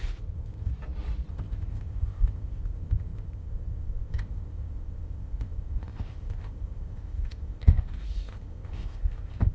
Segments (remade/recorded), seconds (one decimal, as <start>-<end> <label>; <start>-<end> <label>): 0.0-0.7 remade; 0.7-1.3 recorded; 1.3-9.5 remade